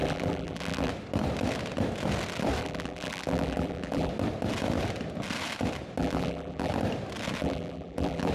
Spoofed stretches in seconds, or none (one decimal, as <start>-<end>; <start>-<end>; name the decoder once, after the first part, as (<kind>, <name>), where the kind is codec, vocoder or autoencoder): 0.0-0.9 (vocoder, BigVGAN v2); 2.6-4.1; 6.0-6.7; 7.4-8.3